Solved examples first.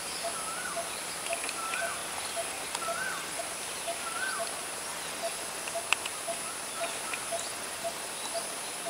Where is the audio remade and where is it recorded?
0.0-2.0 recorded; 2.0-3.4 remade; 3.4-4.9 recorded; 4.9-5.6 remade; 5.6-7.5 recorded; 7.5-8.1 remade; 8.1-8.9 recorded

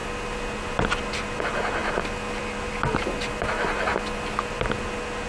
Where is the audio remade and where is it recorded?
0.0-1.4 remade; 1.4-1.8 recorded; 1.8-4.8 remade; 4.8-5.3 recorded

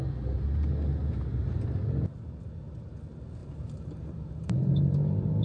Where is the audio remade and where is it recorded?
0.0-3.4 recorded; 3.4-4.8 remade; 4.8-5.4 recorded

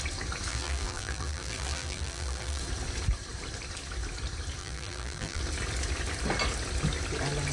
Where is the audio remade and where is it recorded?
0.0-0.5 recorded; 0.5-2.6 remade; 2.6-4.6 recorded; 4.6-5.4 remade; 5.4-7.5 recorded

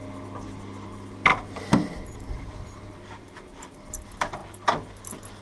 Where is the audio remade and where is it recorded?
0.0-1.3 recorded; 1.3-3.9 remade; 3.9-5.4 recorded

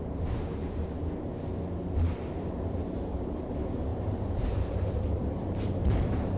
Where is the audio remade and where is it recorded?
0.0-1.3 remade; 1.3-2.3 recorded; 2.3-6.4 remade

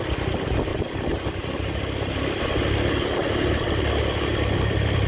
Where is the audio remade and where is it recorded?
0.0-0.7 recorded; 0.7-3.8 remade; 3.8-4.3 recorded; 4.3-5.1 remade